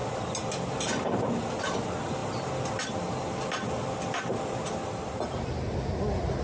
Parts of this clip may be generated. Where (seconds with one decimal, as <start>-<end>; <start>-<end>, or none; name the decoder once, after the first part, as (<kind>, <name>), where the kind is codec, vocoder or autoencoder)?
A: none